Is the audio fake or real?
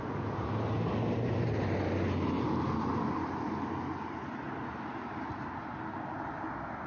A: real